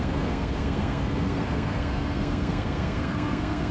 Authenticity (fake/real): fake